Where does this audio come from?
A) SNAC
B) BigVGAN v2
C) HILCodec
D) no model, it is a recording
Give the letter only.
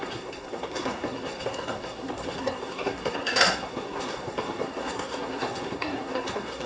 A